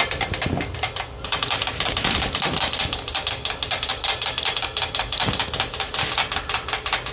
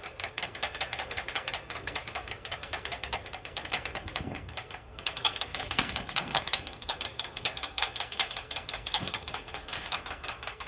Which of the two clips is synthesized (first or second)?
second